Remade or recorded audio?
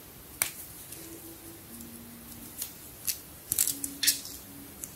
recorded